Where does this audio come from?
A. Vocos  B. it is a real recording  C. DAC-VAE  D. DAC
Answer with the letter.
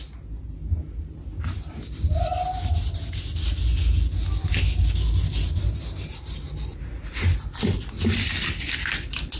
B